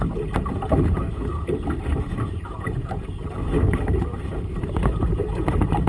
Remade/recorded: remade